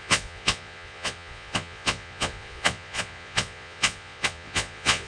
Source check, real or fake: fake